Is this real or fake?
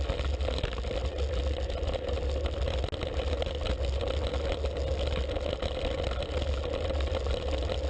real